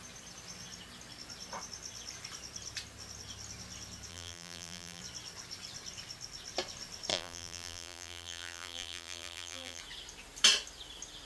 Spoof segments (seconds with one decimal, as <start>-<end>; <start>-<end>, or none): 4.1-5.0; 7.1-9.8